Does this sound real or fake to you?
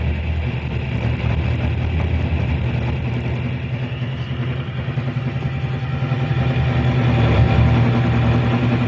real